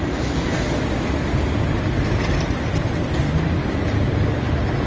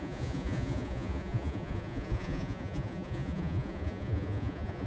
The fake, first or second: second